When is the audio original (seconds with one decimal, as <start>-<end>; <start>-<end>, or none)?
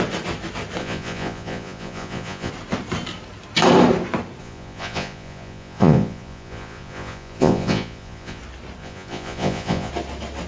0.0-0.8; 2.5-4.4; 8.4-8.8; 9.9-10.5